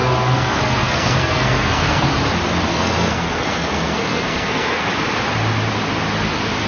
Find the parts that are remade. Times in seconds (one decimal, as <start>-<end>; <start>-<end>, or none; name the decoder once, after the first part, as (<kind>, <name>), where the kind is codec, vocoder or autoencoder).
0.0-2.1 (codec, SNAC); 2.7-4.9